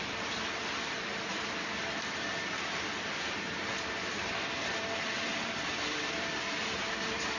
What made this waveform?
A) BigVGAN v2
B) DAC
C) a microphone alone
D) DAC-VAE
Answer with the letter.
A